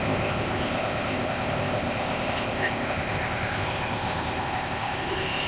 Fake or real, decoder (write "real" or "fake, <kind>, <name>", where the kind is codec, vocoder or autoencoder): fake, codec, ZipCodec